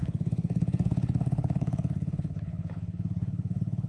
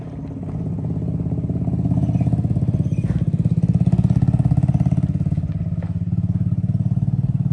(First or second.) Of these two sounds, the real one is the second